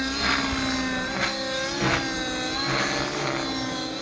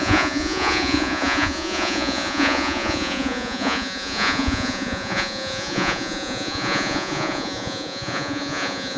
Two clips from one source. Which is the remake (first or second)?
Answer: second